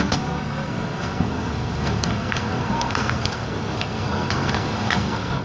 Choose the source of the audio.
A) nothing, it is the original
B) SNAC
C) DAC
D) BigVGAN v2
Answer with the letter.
B